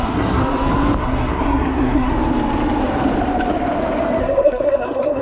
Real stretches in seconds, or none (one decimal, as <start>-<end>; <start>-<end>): 0.4-1.0; 2.1-4.2